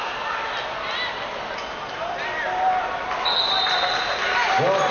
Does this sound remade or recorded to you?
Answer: recorded